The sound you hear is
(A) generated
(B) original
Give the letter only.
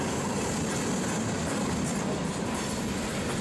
A